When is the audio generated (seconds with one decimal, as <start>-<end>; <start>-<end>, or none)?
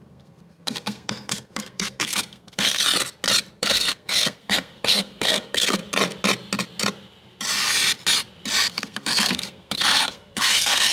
0.0-2.8; 3.6-5.8; 8.7-10.9